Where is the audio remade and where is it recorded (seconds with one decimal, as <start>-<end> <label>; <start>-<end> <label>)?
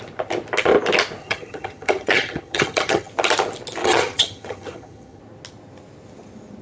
0.0-1.2 recorded; 1.2-3.1 remade; 3.1-3.8 recorded; 3.8-5.2 remade; 5.2-6.6 recorded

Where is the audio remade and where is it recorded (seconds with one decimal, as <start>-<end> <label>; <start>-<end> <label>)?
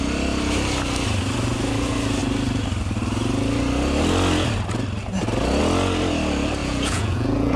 0.0-6.6 recorded; 6.6-7.6 remade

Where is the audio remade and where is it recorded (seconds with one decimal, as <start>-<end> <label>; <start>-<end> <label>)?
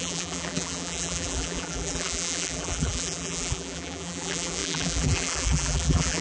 0.0-6.2 remade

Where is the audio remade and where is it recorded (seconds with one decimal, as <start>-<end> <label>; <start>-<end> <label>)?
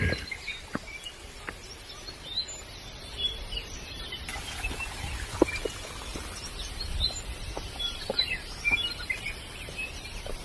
0.0-10.4 recorded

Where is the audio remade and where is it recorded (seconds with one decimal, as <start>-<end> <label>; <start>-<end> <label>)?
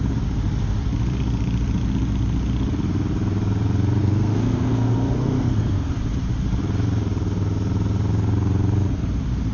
0.0-4.0 recorded; 4.0-5.9 remade; 5.9-9.5 recorded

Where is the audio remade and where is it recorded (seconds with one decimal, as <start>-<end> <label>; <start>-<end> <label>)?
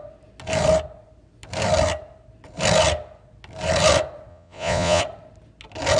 0.0-4.3 recorded; 4.3-5.0 remade; 5.0-6.0 recorded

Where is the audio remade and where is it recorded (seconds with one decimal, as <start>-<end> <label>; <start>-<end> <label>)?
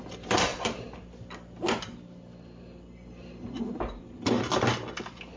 0.0-5.4 recorded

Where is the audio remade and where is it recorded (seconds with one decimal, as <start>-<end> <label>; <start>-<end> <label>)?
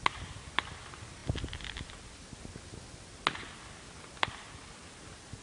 0.0-5.4 recorded